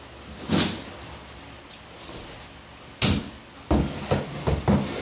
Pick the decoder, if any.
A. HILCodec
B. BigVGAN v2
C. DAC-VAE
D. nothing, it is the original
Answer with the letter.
D